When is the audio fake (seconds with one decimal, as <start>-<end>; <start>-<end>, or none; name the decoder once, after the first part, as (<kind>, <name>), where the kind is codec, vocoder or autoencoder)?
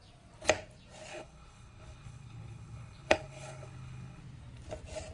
1.1-4.2 (codec, HILCodec)